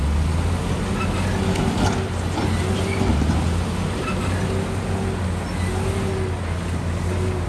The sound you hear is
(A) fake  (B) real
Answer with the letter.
B